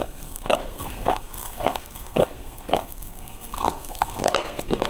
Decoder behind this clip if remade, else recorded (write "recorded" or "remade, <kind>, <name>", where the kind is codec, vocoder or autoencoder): remade, codec, SNAC